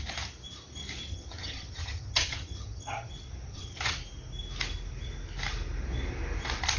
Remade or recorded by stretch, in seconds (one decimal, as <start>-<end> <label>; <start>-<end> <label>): 0.0-1.1 recorded; 1.1-3.1 remade; 3.1-3.5 recorded; 3.5-4.0 remade; 4.0-6.8 recorded